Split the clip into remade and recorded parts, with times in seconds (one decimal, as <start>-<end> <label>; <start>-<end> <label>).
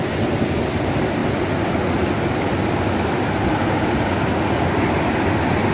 0.0-5.7 recorded